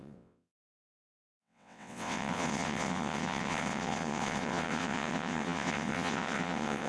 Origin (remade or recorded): remade